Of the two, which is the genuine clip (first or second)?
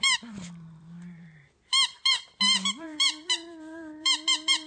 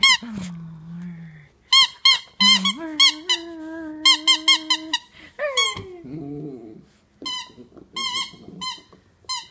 second